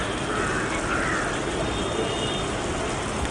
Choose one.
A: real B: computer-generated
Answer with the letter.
A